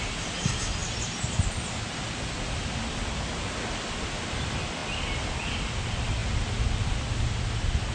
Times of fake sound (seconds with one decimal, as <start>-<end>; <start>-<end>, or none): none